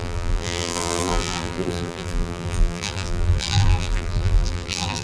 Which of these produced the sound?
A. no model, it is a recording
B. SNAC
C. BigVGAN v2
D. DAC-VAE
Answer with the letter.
C